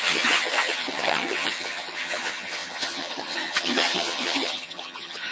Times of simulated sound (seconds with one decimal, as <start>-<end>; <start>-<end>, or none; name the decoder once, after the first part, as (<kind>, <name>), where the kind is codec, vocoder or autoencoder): 0.0-5.3 (vocoder, HiFi-GAN)